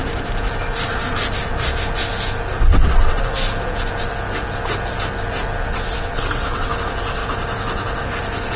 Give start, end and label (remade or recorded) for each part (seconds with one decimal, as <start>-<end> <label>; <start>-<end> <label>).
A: 0.0-2.6 recorded; 2.6-3.2 remade; 3.2-5.7 recorded; 5.7-6.7 remade; 6.7-8.6 recorded